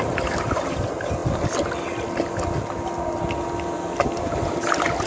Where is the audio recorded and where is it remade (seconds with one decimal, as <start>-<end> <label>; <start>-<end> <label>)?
0.0-1.2 remade; 1.2-4.2 recorded; 4.2-5.1 remade